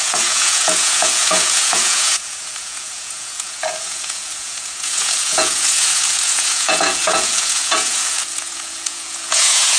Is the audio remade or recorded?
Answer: remade